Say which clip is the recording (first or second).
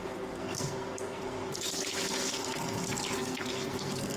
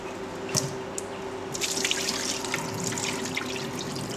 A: second